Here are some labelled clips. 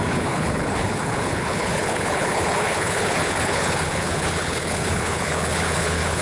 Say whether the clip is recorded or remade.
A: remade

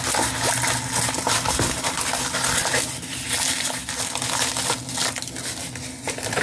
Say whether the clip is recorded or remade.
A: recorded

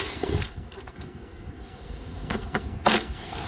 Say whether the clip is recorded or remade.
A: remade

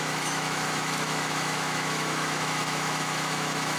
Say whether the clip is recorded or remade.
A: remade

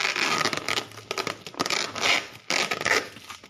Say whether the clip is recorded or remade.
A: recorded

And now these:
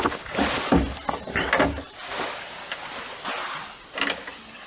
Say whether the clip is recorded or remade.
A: recorded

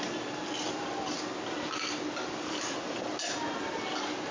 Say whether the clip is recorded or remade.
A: recorded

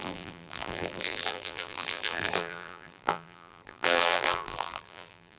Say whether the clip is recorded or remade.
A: remade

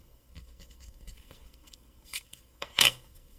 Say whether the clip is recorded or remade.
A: remade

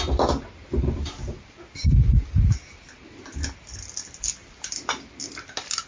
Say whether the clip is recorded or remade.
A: recorded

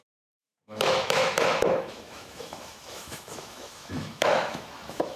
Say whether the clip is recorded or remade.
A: remade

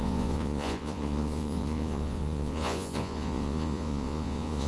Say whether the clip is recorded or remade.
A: remade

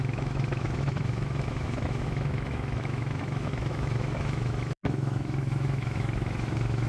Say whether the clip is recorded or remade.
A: remade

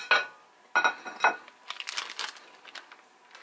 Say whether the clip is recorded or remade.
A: recorded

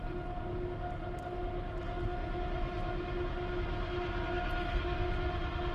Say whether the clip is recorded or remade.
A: recorded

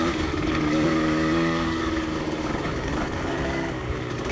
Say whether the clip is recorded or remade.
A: remade